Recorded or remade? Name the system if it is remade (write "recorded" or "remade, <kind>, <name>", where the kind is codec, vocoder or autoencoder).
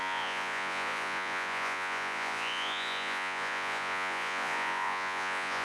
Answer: remade, vocoder, Vocos